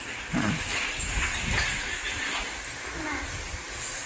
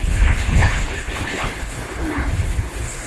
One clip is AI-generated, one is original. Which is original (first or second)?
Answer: first